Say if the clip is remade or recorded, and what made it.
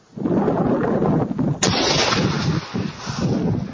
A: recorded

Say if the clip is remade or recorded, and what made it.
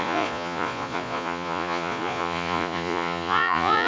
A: remade, vocoder, Vocos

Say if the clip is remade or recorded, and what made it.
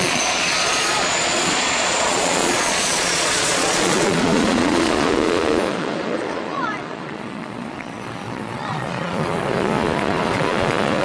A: remade, vocoder, Vocos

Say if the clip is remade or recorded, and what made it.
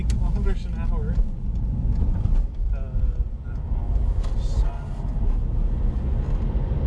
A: recorded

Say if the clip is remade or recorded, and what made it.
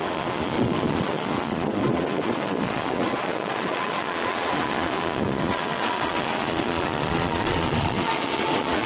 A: remade, vocoder, Vocos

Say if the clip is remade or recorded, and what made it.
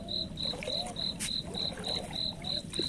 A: recorded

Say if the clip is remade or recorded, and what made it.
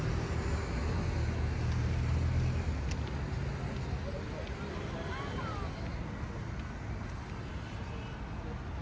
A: recorded